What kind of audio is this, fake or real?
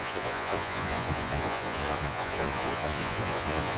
fake